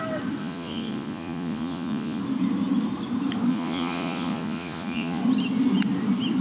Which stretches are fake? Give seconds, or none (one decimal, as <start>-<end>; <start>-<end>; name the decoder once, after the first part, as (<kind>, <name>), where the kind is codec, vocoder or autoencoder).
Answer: 0.4-2.2 (vocoder, Vocos); 3.5-5.2